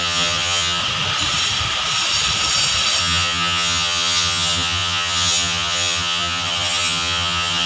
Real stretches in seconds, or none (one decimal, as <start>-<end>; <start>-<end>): 0.8-3.0